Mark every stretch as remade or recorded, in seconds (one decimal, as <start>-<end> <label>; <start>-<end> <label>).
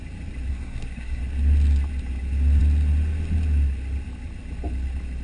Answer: 0.0-0.5 recorded; 0.5-1.2 remade; 1.2-5.2 recorded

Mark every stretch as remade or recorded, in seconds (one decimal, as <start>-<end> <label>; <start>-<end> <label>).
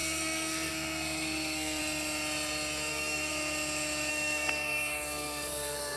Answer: 0.0-1.8 remade; 1.8-2.9 recorded; 2.9-3.3 remade; 3.3-4.1 recorded; 4.1-6.0 remade